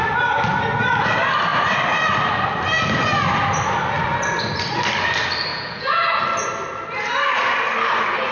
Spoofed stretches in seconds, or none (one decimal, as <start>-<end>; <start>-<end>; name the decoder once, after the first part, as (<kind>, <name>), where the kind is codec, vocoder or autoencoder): 5.5-6.2 (vocoder, Vocos)